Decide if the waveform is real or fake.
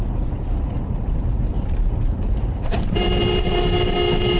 fake